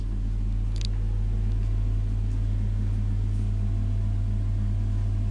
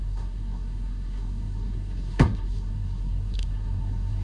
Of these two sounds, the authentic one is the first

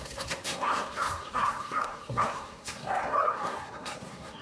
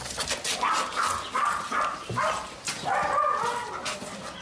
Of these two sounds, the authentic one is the second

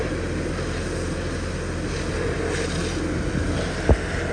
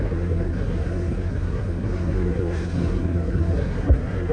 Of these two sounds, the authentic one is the first